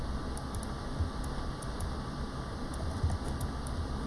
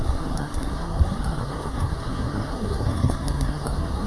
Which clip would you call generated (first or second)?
second